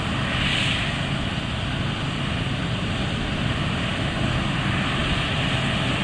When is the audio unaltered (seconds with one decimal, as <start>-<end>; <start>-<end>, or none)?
0.0-6.0